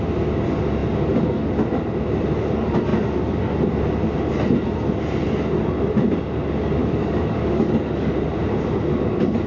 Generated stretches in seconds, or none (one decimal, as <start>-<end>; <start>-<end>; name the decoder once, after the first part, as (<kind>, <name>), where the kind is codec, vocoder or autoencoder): 6.8-8.1 (codec, DAC)